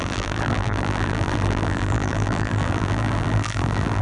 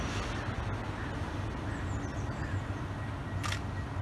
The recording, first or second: second